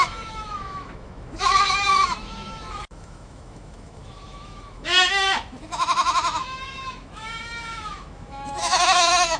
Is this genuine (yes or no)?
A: no